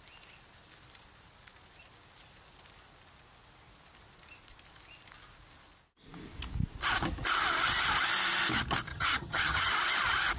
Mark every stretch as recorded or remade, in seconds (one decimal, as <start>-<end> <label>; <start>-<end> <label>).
0.0-8.9 recorded; 8.9-9.7 remade; 9.7-10.4 recorded